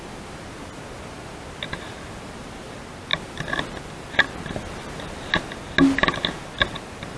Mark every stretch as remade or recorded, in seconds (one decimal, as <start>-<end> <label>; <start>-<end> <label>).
0.0-7.2 recorded